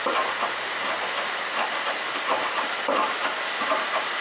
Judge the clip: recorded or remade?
recorded